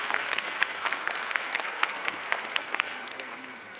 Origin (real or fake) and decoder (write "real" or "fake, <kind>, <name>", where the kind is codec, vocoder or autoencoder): fake, codec, SNAC